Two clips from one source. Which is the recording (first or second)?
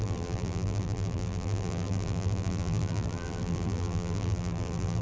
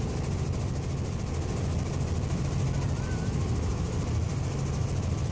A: second